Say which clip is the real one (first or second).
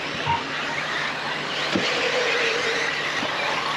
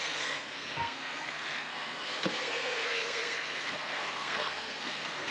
first